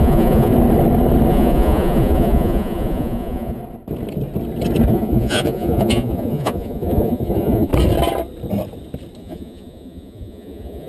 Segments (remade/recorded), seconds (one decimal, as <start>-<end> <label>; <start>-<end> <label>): 0.0-0.5 remade; 0.5-1.3 recorded; 1.3-3.6 remade; 3.6-4.9 recorded; 4.9-7.7 remade; 7.7-9.2 recorded; 9.2-10.9 remade